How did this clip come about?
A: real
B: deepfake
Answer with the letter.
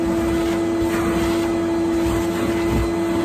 A